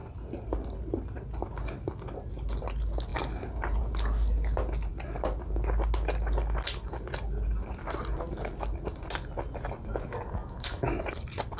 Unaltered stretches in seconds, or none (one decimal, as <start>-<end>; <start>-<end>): 0.0-10.4; 11.0-11.6

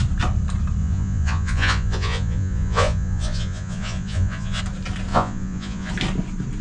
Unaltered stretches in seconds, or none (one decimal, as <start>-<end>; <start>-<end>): 0.0-0.8; 4.6-5.1; 5.9-6.6

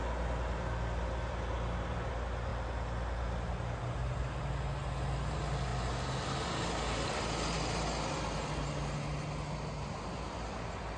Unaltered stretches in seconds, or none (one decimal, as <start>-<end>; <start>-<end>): 0.0-11.0

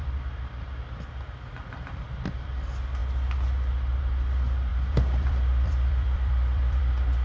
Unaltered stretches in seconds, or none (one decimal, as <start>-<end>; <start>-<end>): 1.8-4.7; 6.8-7.2